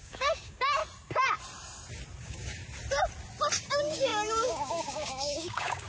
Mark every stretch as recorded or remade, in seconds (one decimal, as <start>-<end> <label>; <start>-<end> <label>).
0.0-0.8 remade; 0.8-2.2 recorded; 2.2-2.6 remade; 2.6-3.6 recorded; 3.6-5.9 remade

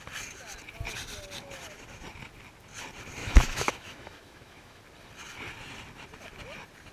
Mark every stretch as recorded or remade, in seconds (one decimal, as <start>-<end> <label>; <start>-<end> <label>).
0.0-3.2 recorded; 3.2-4.8 remade; 4.8-6.9 recorded

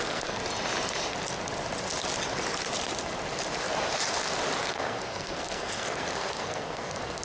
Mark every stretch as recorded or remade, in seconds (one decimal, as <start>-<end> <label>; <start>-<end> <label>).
0.0-0.4 remade; 0.4-4.7 recorded; 4.7-7.2 remade

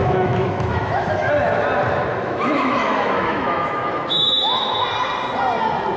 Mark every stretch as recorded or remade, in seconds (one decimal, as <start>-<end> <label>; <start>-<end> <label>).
0.0-1.3 remade; 1.3-2.1 recorded; 2.1-4.8 remade; 4.8-6.0 recorded

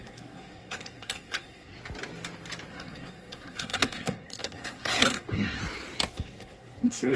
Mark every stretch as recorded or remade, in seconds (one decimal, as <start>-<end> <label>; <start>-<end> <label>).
0.0-1.7 remade; 1.7-2.7 recorded; 2.7-5.6 remade; 5.6-6.1 recorded; 6.1-7.2 remade

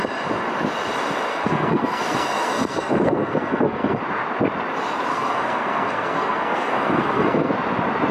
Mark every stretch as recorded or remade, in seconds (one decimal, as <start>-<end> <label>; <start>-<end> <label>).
0.0-1.3 recorded; 1.3-4.0 remade; 4.0-5.1 recorded; 5.1-7.5 remade; 7.5-8.1 recorded

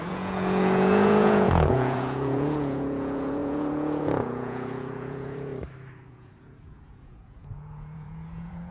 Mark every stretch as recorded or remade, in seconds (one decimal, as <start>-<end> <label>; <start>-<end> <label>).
0.0-5.5 remade; 5.5-6.1 recorded; 6.1-8.7 remade

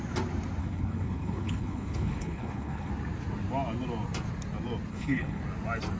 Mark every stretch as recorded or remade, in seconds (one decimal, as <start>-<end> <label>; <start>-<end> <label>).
0.0-0.6 recorded; 0.6-2.9 remade; 2.9-4.9 recorded; 4.9-5.4 remade; 5.4-6.0 recorded